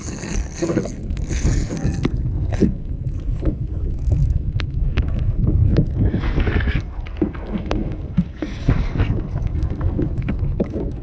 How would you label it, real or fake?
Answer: fake